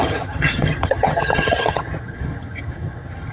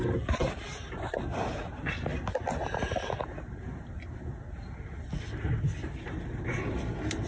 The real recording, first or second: second